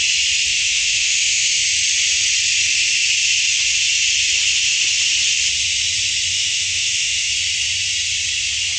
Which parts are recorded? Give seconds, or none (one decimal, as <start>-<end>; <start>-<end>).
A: 0.0-0.5; 1.6-6.3; 7.3-8.8